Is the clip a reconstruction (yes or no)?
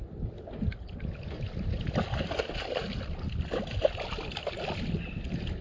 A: no